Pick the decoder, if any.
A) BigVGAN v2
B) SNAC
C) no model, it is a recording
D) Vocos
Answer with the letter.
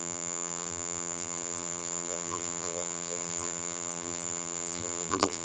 A